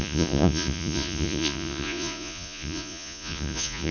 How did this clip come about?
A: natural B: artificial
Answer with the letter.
B